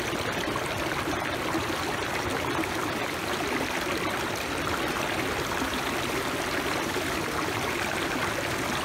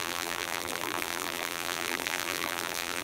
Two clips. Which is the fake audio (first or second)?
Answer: second